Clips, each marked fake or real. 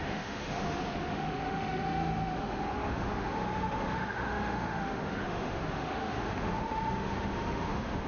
fake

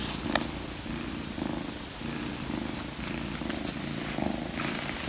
real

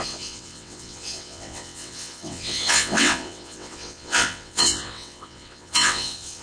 fake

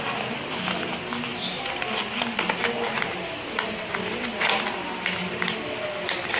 real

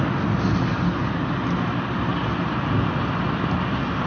real